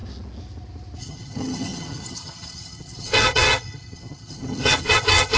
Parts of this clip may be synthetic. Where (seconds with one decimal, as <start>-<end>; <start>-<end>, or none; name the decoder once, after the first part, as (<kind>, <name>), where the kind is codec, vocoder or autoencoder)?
1.0-5.4 (vocoder, HiFi-GAN)